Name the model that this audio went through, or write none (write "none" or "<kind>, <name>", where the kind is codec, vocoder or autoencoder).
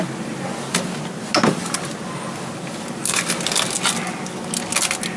none